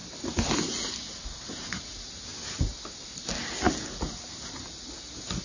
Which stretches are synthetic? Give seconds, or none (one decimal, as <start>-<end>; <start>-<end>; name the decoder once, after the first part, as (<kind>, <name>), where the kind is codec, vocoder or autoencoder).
none